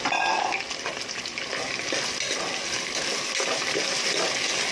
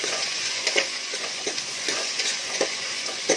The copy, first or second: second